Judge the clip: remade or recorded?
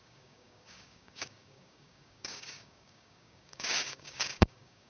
remade